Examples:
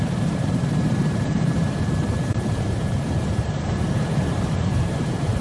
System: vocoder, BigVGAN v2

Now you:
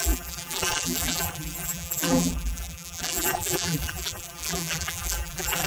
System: vocoder, BigVGAN v2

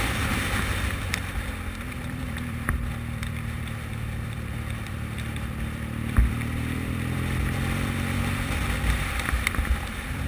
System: vocoder, BigVGAN v2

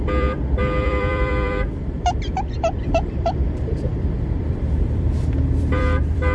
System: vocoder, BigVGAN v2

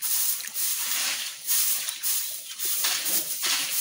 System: vocoder, BigVGAN v2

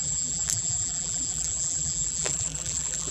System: vocoder, BigVGAN v2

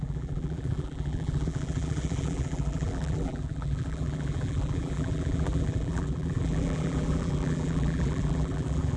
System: vocoder, BigVGAN v2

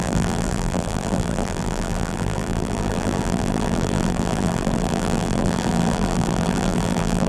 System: vocoder, BigVGAN v2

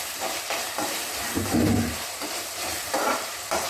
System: vocoder, BigVGAN v2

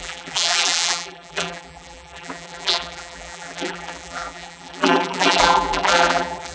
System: vocoder, BigVGAN v2